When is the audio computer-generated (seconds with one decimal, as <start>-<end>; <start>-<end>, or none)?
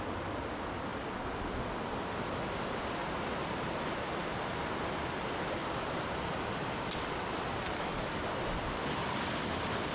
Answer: none